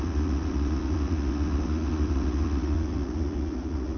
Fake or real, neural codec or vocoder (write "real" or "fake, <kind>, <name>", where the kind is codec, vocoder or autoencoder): fake, vocoder, Vocos